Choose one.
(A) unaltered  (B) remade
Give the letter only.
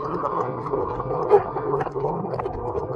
B